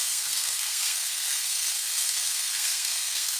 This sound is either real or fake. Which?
fake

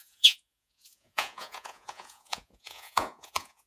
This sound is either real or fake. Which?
fake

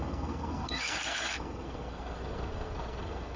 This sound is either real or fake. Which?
fake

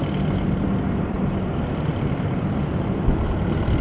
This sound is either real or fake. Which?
fake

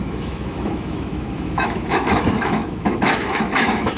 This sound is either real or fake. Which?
fake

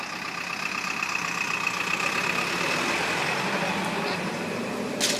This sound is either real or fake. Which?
real